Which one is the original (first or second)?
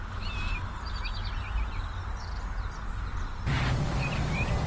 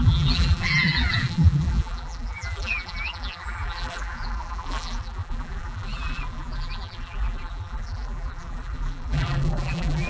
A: first